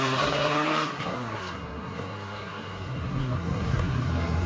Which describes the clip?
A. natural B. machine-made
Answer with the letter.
B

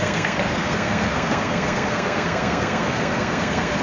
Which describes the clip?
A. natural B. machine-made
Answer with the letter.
B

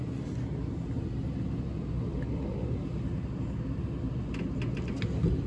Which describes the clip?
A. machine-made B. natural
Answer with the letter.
B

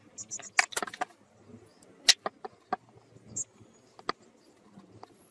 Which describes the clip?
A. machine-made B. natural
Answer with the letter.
B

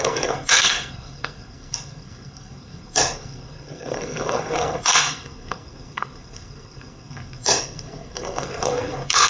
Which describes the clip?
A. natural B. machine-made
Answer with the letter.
B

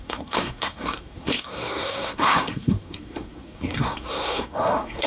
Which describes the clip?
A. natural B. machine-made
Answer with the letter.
B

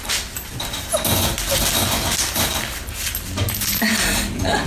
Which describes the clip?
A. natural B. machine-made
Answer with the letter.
A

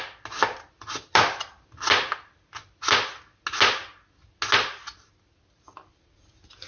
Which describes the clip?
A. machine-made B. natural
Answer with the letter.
B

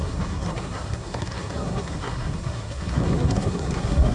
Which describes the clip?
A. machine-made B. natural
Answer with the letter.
A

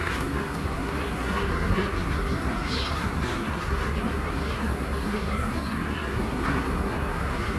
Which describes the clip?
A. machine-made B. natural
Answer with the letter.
A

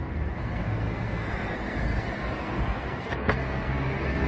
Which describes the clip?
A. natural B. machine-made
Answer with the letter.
B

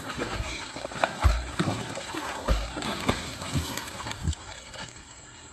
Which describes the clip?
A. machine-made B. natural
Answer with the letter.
A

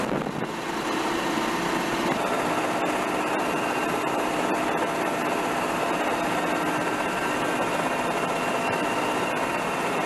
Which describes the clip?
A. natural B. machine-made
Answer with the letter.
A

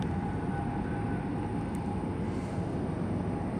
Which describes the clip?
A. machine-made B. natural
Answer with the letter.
B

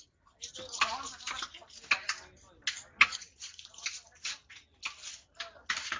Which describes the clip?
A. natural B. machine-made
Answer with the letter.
A